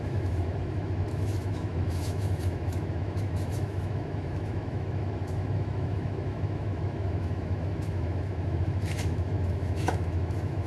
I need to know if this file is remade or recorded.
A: remade